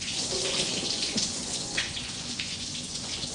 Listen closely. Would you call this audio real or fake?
fake